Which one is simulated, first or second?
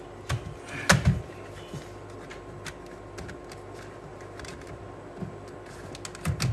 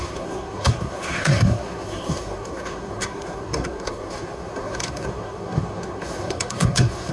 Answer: second